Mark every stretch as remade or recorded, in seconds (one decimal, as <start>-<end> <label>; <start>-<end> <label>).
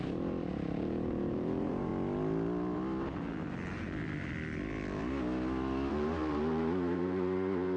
0.0-1.9 remade; 1.9-5.9 recorded; 5.9-7.8 remade